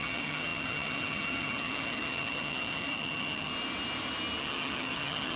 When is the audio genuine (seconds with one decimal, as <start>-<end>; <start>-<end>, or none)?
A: 3.5-4.4